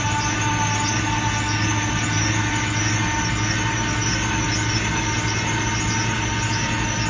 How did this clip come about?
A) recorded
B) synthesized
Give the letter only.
A